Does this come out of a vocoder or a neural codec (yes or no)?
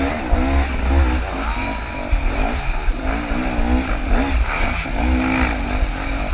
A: no